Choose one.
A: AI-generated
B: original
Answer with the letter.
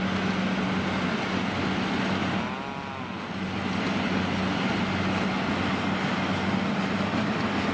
B